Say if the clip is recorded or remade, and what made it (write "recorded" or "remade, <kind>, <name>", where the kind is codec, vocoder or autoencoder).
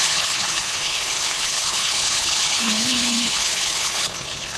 remade, codec, HILCodec